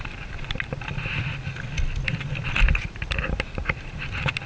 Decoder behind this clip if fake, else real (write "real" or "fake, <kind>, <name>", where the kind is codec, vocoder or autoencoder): real